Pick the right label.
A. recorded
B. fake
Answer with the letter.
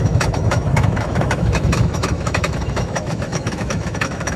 B